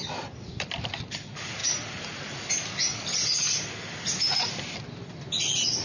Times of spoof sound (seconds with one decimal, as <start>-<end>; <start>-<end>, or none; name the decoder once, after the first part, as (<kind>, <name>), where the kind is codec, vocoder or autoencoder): none